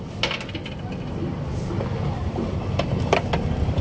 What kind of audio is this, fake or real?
real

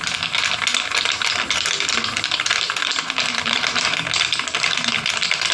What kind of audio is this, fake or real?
real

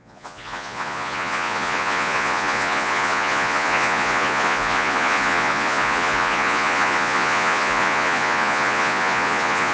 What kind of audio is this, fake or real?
fake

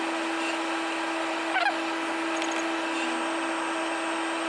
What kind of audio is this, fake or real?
real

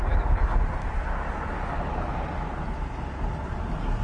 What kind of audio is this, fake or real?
real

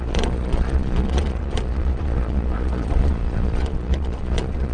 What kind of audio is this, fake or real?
fake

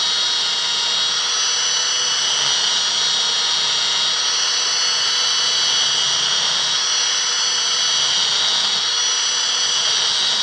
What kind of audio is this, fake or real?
real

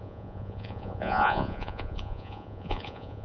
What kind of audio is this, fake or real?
fake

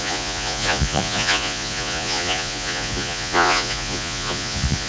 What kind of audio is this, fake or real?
fake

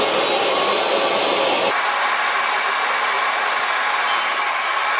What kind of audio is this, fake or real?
real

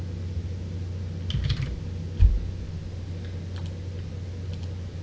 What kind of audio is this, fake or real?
real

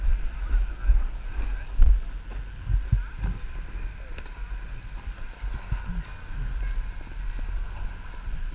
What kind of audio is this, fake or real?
real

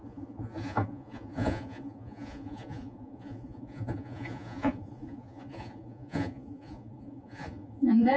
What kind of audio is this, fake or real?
fake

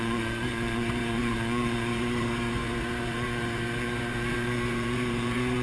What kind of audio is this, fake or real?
fake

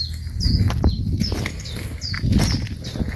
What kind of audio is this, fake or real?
real